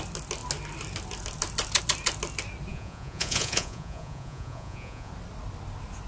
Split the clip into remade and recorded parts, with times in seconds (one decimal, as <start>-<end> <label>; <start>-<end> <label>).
0.0-2.7 recorded; 2.7-5.1 remade; 5.1-6.1 recorded

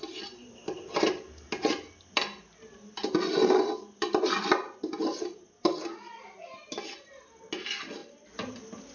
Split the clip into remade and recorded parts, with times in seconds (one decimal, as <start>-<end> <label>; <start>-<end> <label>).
0.0-8.9 recorded

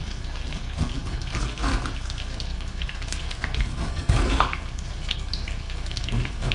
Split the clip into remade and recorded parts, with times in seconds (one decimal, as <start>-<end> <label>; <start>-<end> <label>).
0.0-6.5 remade

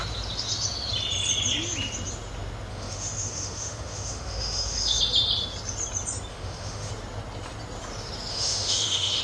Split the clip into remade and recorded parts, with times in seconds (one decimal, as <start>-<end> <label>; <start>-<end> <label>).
0.0-2.7 recorded; 2.7-5.0 remade; 5.0-6.3 recorded; 6.3-6.9 remade; 6.9-8.3 recorded; 8.3-9.2 remade